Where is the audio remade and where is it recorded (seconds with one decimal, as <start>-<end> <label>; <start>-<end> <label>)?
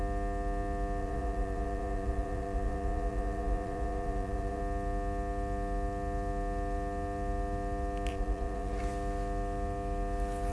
0.0-1.0 recorded; 1.0-4.6 remade; 4.6-8.1 recorded; 8.1-8.8 remade; 8.8-10.5 recorded